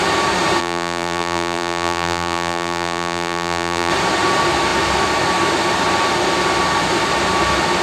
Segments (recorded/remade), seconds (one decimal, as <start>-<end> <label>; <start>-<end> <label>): 0.0-0.6 recorded; 0.6-3.9 remade; 3.9-7.8 recorded